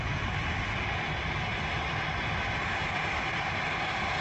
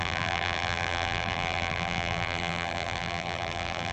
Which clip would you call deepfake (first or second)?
second